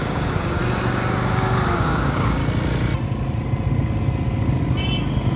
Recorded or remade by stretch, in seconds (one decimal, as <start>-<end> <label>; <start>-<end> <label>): 0.0-0.6 remade; 0.6-1.1 recorded; 1.1-2.4 remade; 2.4-5.4 recorded

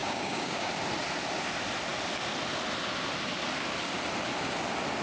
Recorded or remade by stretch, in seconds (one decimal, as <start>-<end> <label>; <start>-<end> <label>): 0.0-0.7 remade; 0.7-5.0 recorded

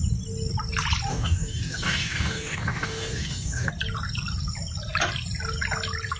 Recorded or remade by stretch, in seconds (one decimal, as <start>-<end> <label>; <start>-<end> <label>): 0.0-1.1 recorded; 1.1-3.7 remade; 3.7-6.2 recorded

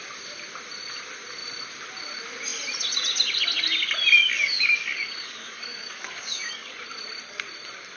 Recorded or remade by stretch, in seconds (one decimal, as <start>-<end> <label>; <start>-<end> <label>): 0.0-4.2 recorded; 4.2-6.7 remade; 6.7-8.0 recorded

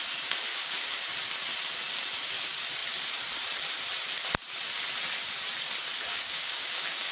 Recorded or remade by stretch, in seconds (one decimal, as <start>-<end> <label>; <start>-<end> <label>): 0.0-0.5 recorded; 0.5-1.0 remade; 1.0-6.1 recorded; 6.1-7.1 remade

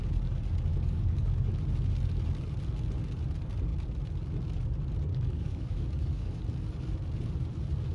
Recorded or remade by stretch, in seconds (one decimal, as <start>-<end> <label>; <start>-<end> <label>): 0.0-0.7 recorded; 0.7-1.5 remade; 1.5-5.1 recorded; 5.1-6.4 remade; 6.4-7.9 recorded